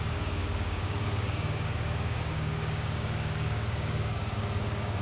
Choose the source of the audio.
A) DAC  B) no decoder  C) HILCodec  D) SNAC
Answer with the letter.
A